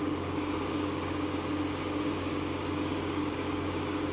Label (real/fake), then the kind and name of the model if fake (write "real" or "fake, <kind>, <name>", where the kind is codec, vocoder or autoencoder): fake, codec, DAC